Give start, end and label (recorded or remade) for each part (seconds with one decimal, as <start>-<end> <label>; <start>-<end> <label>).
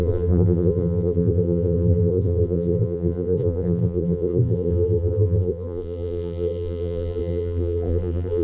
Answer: 0.0-8.4 remade